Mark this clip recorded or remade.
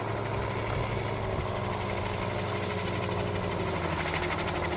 recorded